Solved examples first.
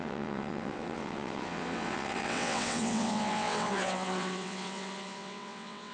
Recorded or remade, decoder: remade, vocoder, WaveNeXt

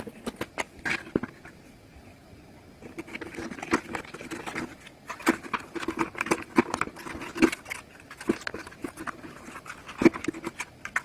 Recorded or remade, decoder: recorded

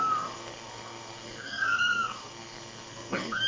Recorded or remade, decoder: remade, codec, SNAC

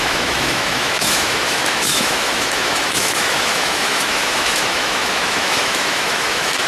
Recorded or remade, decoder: remade, autoencoder, DAC-VAE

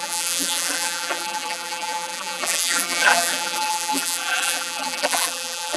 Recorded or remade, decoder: remade, vocoder, BigVGAN v2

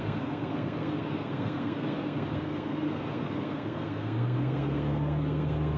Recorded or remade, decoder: remade, codec, SNAC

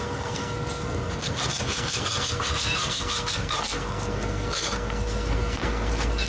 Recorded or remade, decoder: remade, codec, SNAC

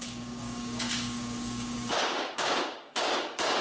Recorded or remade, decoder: remade, codec, DAC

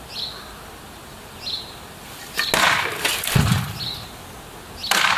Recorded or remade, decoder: recorded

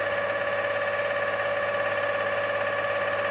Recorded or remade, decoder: recorded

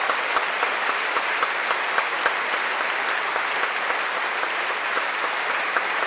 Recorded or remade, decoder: recorded